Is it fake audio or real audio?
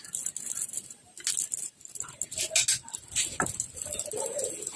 real